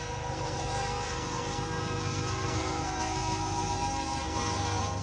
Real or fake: fake